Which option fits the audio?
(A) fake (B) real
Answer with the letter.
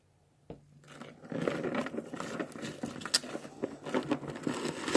B